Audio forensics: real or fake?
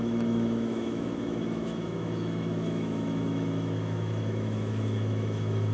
fake